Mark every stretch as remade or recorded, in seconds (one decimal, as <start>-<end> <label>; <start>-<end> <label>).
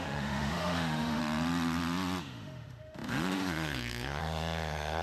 0.0-1.2 remade; 1.2-2.2 recorded; 2.2-5.0 remade